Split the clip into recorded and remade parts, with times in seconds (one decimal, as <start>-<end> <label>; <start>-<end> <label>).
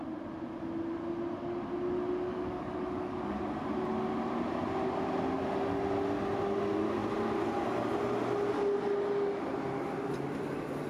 0.0-2.3 recorded; 2.3-3.4 remade; 3.4-10.9 recorded